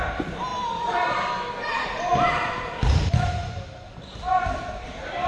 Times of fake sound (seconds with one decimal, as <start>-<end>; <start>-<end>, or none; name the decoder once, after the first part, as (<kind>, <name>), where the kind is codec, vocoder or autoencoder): none